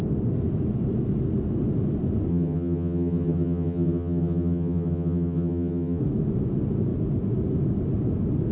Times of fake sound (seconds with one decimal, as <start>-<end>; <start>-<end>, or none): 2.3-6.0